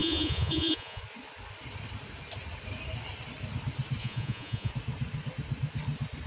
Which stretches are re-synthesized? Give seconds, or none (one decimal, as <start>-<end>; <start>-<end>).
0.0-1.0; 4.0-4.7